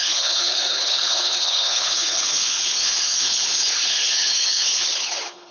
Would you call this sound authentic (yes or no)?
no